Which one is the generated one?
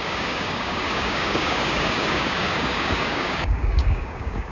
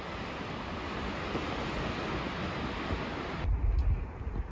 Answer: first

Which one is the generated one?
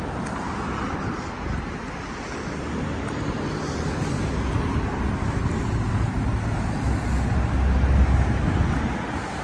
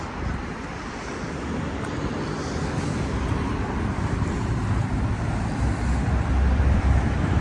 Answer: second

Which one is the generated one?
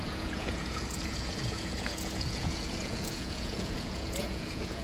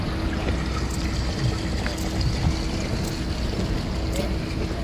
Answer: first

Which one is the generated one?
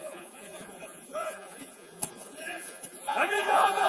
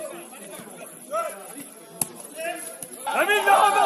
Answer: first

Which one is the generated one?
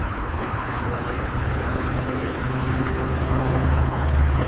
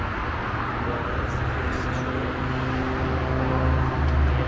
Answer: first